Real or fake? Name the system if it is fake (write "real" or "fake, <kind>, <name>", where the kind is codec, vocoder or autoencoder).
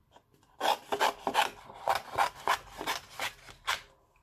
real